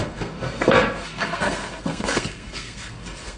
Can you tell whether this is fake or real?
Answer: fake